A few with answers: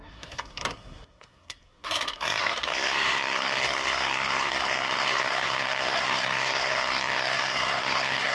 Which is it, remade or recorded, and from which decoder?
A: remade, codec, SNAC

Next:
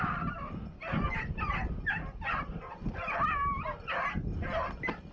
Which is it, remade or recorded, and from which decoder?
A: recorded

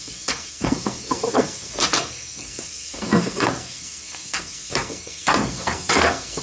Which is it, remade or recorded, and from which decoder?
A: remade, codec, SNAC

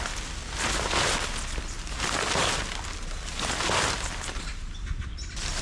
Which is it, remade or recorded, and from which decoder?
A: recorded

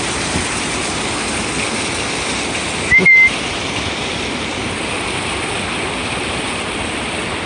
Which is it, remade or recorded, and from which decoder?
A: recorded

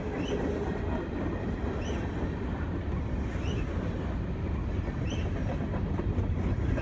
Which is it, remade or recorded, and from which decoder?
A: recorded